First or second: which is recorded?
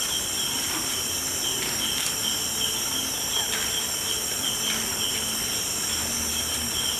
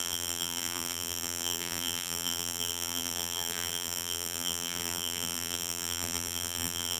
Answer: first